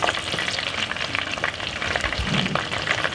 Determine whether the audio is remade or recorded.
remade